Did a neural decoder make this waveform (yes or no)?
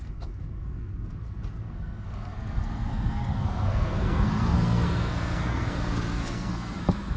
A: yes